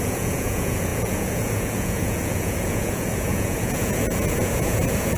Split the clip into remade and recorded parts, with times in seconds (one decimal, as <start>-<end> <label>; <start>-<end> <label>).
0.0-5.2 remade